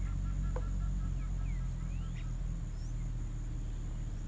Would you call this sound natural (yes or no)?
yes